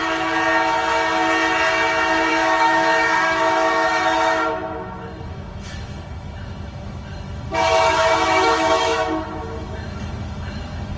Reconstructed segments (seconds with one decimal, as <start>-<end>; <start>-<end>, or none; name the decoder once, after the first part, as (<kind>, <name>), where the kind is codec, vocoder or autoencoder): 2.3-11.0 (autoencoder, DAC-VAE)

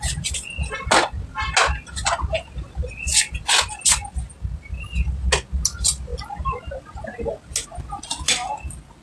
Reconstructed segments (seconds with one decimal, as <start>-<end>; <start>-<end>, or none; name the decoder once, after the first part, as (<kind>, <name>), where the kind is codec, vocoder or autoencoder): none

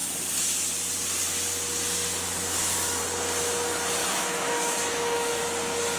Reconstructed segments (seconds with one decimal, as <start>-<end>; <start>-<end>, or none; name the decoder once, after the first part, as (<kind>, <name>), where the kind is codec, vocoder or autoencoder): 4.0-5.4 (autoencoder, DAC-VAE)

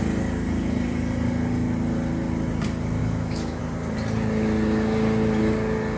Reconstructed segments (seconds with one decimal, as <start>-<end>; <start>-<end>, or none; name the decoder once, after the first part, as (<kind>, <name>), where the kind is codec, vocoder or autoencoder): 3.0-3.6 (autoencoder, DAC-VAE)